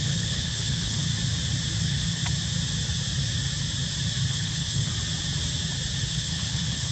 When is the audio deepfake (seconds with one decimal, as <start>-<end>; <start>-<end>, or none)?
0.0-1.1; 1.8-2.2; 4.3-4.9; 6.1-6.9